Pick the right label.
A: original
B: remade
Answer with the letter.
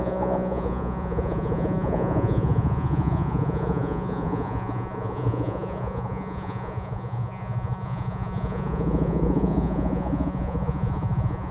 B